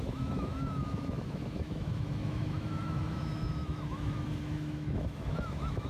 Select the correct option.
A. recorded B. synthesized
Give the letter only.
B